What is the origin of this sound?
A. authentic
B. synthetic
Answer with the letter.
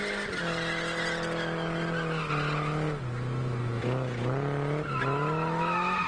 A